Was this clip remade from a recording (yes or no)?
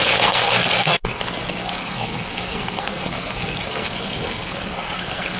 yes